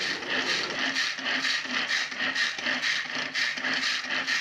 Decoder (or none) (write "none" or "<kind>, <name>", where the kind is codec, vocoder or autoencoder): none